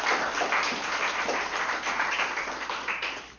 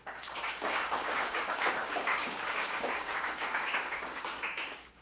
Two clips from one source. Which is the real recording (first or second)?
first